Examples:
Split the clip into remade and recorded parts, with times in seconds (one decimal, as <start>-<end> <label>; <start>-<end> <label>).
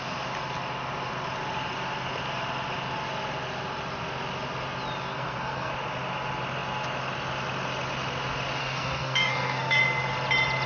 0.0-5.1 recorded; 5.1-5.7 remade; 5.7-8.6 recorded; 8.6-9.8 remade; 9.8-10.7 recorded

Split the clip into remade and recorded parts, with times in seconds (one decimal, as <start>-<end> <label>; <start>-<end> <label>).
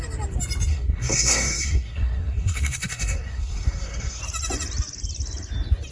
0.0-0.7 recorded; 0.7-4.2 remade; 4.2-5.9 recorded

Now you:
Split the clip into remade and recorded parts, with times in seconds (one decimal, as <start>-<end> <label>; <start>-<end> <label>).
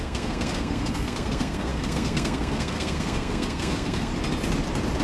0.0-4.1 remade; 4.1-5.0 recorded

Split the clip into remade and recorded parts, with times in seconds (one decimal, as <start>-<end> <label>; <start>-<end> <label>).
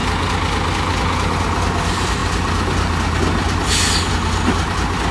0.0-5.1 recorded